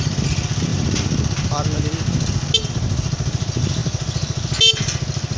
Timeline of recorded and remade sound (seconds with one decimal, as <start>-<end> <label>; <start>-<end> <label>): 0.0-5.4 recorded